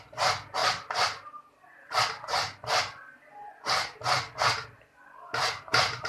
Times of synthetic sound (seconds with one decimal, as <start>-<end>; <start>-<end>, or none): 0.6-1.9; 3.0-6.1